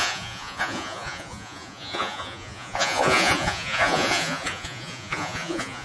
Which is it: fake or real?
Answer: fake